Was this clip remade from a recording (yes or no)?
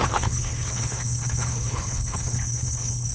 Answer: yes